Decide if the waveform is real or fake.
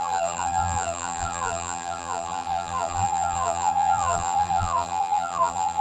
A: fake